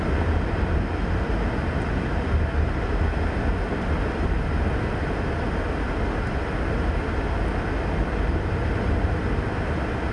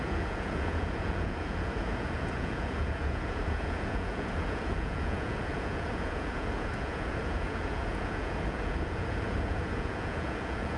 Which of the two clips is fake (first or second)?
second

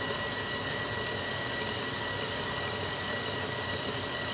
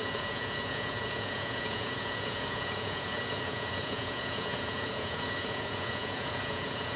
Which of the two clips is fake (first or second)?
second